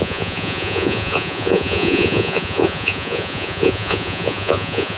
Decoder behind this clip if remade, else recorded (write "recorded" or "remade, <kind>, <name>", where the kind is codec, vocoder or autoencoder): remade, vocoder, Vocos